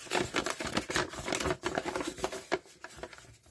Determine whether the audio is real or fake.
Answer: real